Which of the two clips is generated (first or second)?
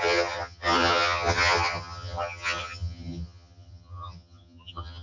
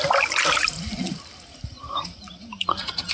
first